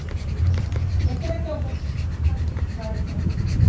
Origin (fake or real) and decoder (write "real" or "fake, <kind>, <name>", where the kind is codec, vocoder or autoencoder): fake, vocoder, BigVGAN v2